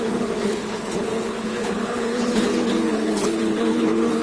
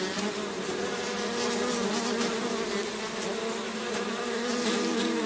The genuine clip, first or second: second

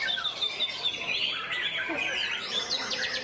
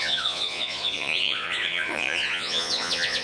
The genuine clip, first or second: first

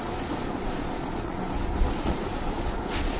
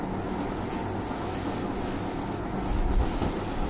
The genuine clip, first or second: second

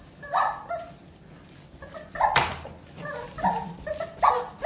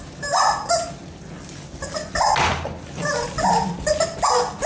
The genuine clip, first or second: second